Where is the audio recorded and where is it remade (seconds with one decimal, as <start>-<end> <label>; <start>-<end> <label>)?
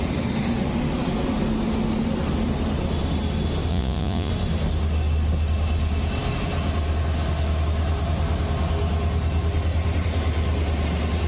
0.0-3.7 recorded; 3.7-4.3 remade; 4.3-11.3 recorded